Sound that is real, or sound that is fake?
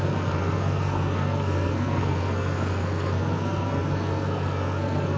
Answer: fake